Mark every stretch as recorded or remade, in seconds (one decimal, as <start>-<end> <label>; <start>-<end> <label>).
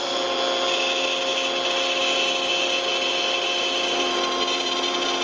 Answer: 0.0-5.2 recorded